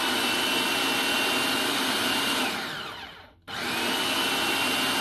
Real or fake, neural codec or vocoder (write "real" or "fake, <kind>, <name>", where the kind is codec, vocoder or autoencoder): real